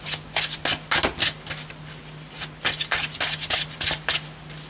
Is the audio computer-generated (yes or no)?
no